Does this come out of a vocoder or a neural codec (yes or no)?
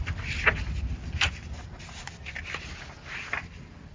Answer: no